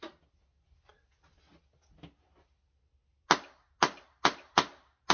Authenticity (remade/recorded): recorded